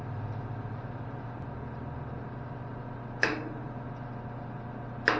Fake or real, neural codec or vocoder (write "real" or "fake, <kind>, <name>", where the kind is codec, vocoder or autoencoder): real